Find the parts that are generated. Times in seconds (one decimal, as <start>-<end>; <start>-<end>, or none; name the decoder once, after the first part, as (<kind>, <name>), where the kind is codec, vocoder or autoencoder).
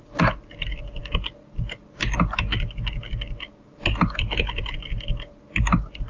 none